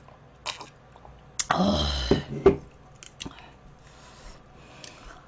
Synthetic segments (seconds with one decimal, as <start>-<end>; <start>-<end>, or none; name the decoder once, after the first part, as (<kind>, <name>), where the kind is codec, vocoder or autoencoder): none